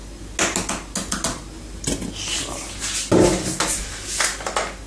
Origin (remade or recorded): recorded